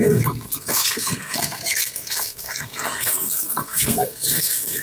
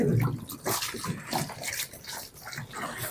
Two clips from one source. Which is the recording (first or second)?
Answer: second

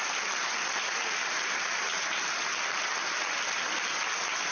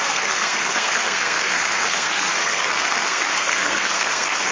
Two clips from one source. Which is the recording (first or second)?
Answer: first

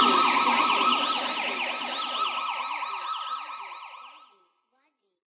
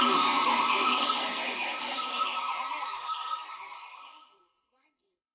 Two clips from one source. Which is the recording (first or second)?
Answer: first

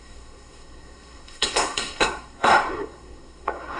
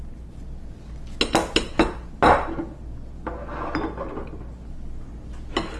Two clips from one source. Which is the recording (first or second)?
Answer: second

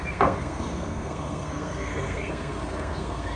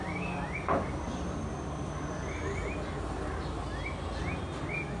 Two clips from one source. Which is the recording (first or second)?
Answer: second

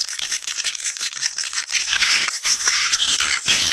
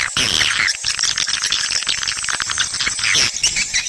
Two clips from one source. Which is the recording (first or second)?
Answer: second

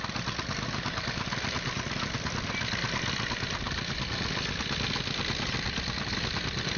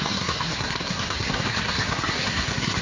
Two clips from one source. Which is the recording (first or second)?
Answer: first